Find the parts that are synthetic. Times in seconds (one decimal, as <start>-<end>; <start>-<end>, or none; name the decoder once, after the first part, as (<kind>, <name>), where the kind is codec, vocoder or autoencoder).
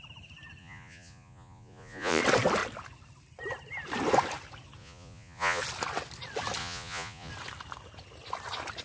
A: 0.6-2.2 (vocoder, Vocos); 4.8-5.6; 6.6-7.3